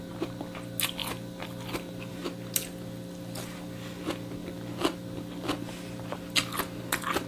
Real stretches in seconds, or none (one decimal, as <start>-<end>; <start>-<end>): 0.0-7.3